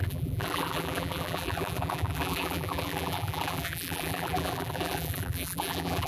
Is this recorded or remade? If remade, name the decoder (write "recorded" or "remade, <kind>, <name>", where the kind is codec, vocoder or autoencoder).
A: remade, vocoder, BigVGAN v2